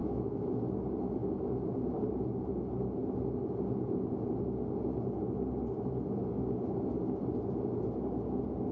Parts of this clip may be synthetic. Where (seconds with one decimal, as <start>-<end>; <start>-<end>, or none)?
0.0-0.6